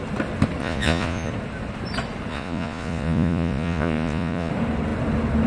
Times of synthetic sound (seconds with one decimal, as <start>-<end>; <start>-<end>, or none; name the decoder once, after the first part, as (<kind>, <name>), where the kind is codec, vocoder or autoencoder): 0.6-1.3 (vocoder, Vocos); 2.3-4.5